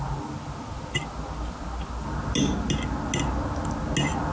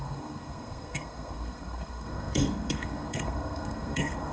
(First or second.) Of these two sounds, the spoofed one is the second